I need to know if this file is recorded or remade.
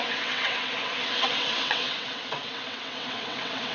remade